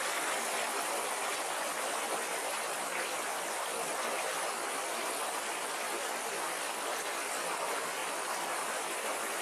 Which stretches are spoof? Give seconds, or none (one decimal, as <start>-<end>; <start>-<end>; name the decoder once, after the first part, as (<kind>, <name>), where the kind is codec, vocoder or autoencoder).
none